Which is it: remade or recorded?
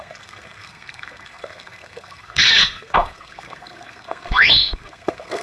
remade